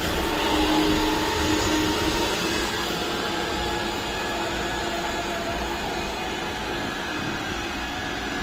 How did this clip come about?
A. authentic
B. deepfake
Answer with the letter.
A